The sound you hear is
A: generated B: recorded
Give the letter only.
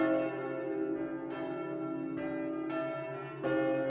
B